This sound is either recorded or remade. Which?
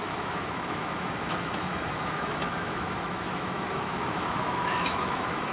remade